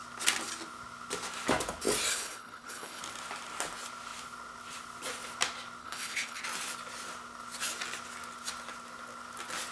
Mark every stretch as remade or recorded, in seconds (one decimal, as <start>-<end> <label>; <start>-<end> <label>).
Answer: 0.0-2.1 recorded; 2.1-3.0 remade; 3.0-5.8 recorded; 5.8-6.4 remade; 6.4-9.7 recorded

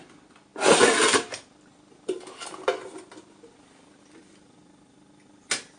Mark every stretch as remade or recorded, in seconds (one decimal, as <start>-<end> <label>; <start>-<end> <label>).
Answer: 0.0-5.8 recorded

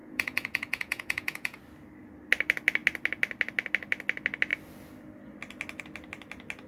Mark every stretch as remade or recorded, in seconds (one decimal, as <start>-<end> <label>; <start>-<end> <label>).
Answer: 0.0-1.6 remade; 1.6-6.7 recorded